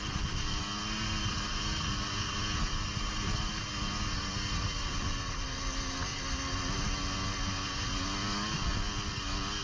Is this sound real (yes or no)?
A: yes